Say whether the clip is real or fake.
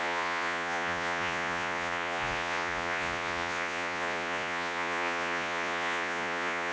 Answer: fake